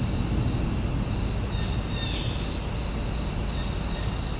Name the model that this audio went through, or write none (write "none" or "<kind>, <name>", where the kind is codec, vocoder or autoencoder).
none